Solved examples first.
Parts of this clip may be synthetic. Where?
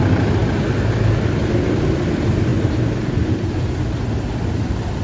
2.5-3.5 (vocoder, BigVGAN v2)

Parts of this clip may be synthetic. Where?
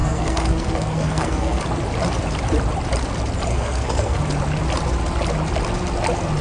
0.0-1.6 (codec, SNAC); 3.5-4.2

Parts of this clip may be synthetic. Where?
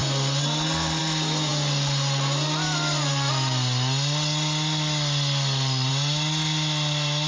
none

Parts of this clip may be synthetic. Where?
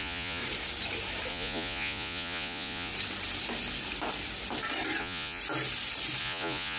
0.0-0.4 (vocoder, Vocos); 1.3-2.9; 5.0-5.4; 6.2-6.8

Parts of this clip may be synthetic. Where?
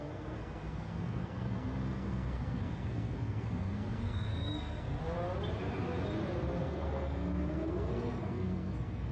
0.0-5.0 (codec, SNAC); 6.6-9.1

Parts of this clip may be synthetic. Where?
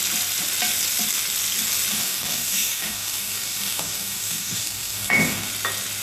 1.9-5.5 (codec, DAC)